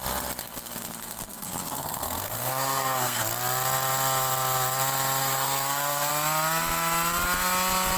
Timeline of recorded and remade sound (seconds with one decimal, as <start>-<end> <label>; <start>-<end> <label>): 0.0-0.4 recorded; 0.4-3.2 remade; 3.2-5.2 recorded; 5.2-6.1 remade; 6.1-8.0 recorded